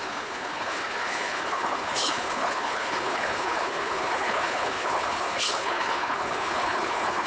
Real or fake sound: fake